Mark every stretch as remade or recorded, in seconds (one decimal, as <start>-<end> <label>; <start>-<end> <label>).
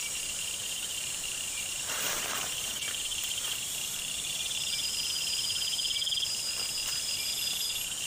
0.0-4.9 remade; 4.9-8.1 recorded